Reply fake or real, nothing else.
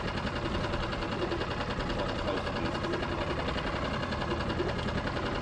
real